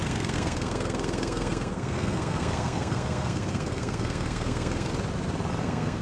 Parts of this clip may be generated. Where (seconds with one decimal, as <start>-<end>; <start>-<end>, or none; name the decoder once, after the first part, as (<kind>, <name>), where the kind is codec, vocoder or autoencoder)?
0.0-4.9 (codec, SNAC); 5.6-6.0